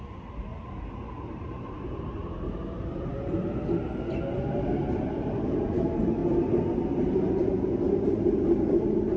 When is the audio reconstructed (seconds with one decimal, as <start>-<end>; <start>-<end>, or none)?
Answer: 0.0-0.5; 1.1-2.2; 5.0-6.2; 7.0-9.2